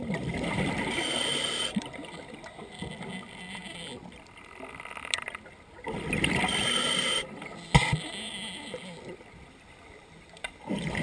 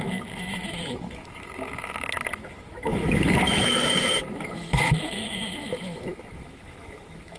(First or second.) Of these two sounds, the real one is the first